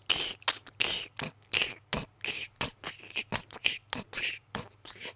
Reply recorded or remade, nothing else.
recorded